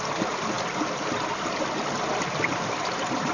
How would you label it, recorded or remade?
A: recorded